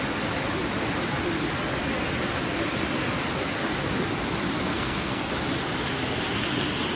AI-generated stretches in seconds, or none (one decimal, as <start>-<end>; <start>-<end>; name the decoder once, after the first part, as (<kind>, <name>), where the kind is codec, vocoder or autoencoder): 4.7-5.3 (codec, SNAC)